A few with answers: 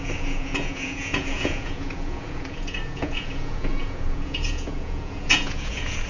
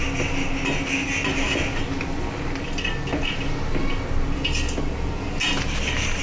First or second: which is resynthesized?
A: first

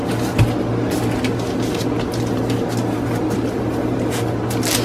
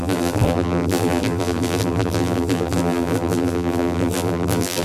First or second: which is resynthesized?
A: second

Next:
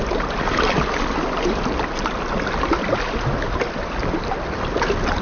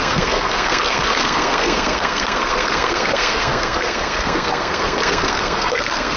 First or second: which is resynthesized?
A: second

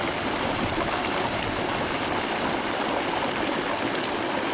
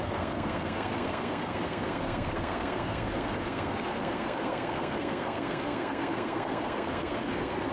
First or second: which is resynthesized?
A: second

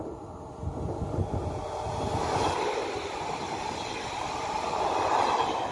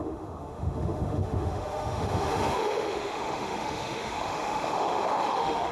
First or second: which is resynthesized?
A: second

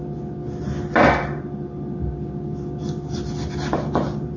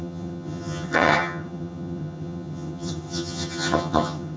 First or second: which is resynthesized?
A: second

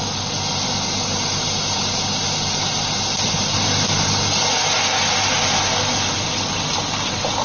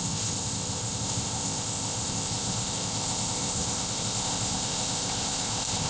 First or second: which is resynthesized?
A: second